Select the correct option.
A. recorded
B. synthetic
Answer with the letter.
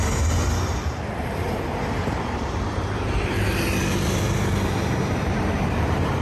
B